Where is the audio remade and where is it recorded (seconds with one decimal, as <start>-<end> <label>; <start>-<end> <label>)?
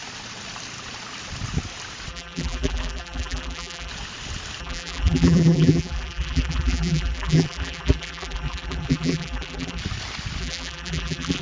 0.0-2.1 recorded; 2.1-3.9 remade; 3.9-4.6 recorded; 4.6-9.8 remade; 9.8-10.4 recorded; 10.4-11.4 remade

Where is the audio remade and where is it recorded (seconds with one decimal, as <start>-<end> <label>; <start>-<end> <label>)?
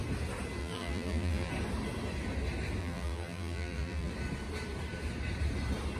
0.0-0.6 recorded; 0.6-1.5 remade; 1.5-2.8 recorded; 2.8-4.1 remade; 4.1-6.0 recorded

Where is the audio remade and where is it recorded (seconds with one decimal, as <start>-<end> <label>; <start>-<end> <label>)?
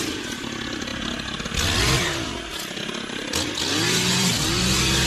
0.0-5.1 recorded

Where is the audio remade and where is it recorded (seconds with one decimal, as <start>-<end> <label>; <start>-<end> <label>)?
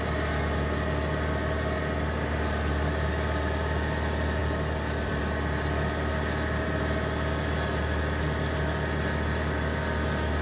0.0-4.4 recorded; 4.4-5.2 remade; 5.2-10.4 recorded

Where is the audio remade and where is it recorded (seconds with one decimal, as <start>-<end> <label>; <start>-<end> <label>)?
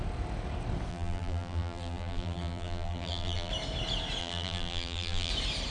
0.0-0.9 recorded; 0.9-3.5 remade; 3.5-4.2 recorded; 4.2-5.3 remade; 5.3-5.7 recorded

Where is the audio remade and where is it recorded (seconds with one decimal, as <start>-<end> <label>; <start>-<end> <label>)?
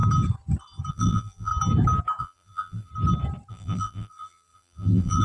0.0-0.9 recorded; 0.9-1.5 remade; 1.5-2.2 recorded; 2.2-2.9 remade; 2.9-3.5 recorded; 3.5-5.2 remade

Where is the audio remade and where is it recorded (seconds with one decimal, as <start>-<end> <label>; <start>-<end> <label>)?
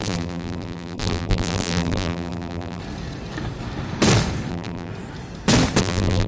0.0-2.8 remade; 2.8-4.5 recorded; 4.5-4.9 remade; 4.9-5.8 recorded; 5.8-6.3 remade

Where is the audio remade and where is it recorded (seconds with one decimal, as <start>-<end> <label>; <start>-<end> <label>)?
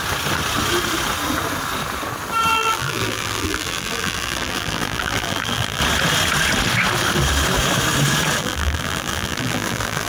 0.0-2.5 recorded; 2.5-5.8 remade; 5.8-8.4 recorded; 8.4-10.1 remade